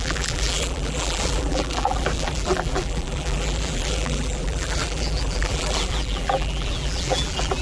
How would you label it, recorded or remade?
remade